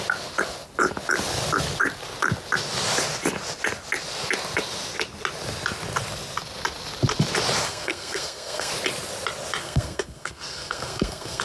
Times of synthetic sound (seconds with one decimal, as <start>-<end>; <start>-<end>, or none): 7.6-8.7; 9.6-11.4